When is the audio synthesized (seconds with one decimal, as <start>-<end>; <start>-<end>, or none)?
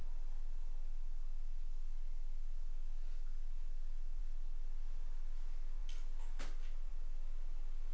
none